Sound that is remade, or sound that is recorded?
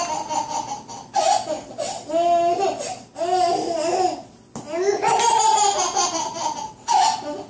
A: recorded